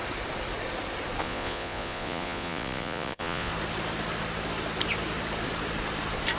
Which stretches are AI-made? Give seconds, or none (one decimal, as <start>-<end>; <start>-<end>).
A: 1.2-3.5